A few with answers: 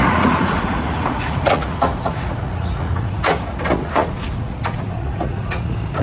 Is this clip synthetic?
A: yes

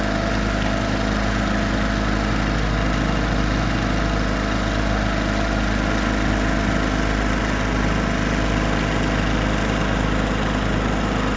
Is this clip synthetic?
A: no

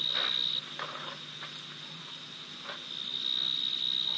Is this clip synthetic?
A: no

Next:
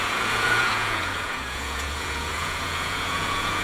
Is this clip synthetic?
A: yes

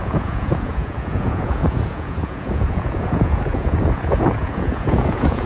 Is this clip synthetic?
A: yes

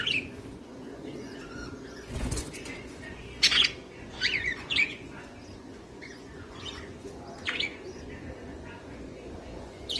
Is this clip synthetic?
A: yes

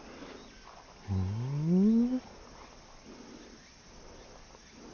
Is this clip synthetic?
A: no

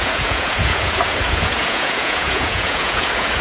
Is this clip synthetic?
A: yes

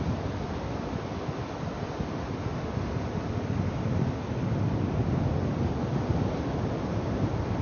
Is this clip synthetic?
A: no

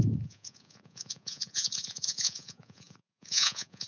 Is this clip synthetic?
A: yes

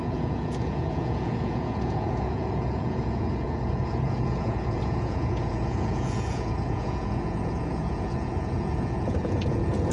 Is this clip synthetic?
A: yes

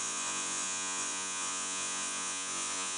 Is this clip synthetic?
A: yes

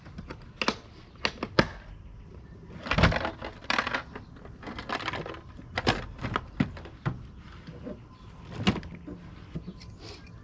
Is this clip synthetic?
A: no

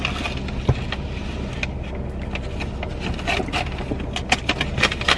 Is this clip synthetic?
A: no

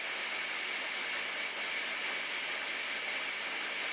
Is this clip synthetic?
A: no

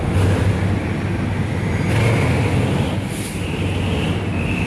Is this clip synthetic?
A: no